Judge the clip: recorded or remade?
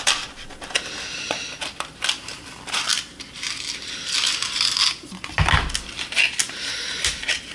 recorded